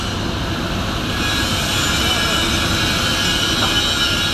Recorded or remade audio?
recorded